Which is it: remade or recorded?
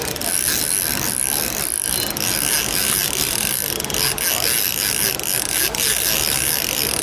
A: recorded